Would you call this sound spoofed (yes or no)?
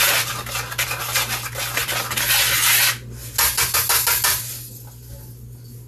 no